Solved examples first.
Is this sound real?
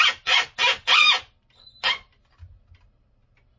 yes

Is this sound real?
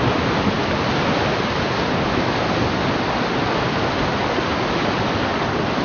yes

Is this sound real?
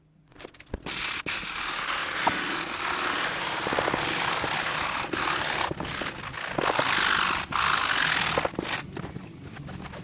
yes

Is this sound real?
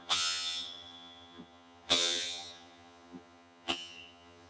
no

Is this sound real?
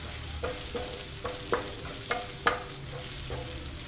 yes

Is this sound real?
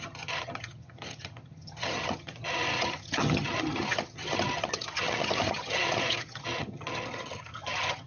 no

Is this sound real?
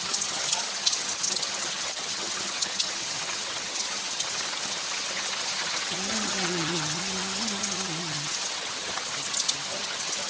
no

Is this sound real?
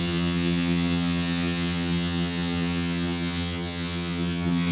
no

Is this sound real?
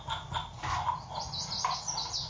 yes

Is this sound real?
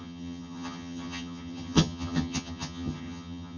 no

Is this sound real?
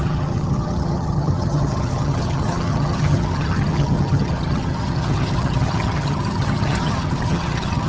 no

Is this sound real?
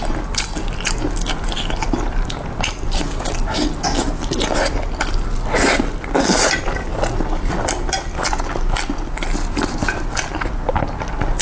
yes